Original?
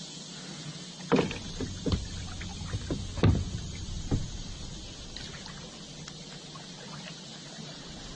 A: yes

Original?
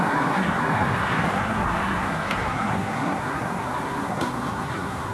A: no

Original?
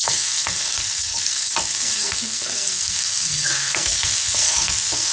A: no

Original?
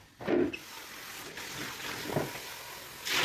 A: yes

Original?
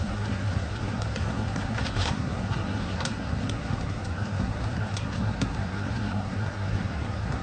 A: no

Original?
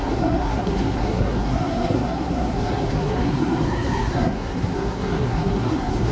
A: no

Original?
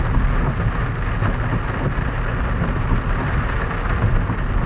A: yes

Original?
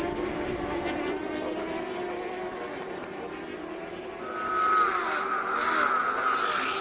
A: yes